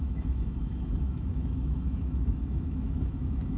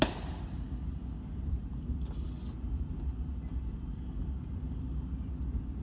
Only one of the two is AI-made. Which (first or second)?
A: first